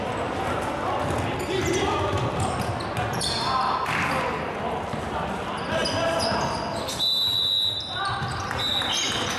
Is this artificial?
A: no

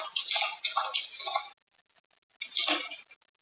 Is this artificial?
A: no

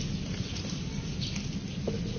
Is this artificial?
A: no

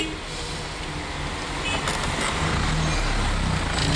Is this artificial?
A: no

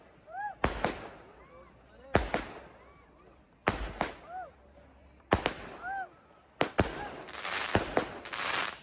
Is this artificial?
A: no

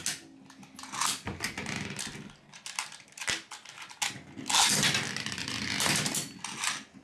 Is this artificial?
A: no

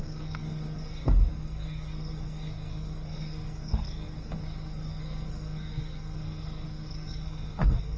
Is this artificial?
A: yes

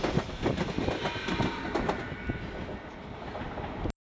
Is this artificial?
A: no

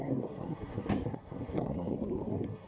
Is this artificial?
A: yes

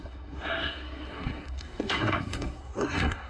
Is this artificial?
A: yes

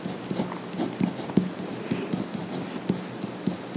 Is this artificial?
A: no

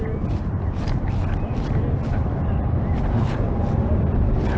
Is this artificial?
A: no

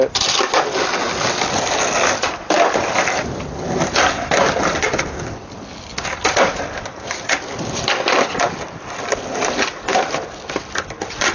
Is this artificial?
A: no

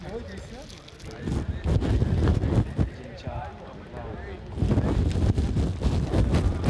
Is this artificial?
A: no